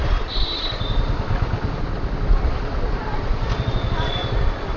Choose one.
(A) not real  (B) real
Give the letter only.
A